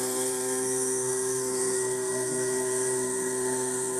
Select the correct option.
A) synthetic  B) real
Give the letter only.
A